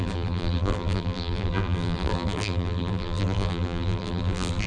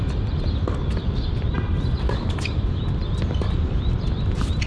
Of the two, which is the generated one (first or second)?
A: first